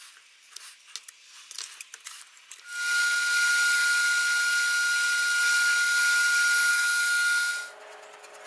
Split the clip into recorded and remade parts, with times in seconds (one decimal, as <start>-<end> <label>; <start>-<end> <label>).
0.0-6.7 recorded; 6.7-7.5 remade; 7.5-8.5 recorded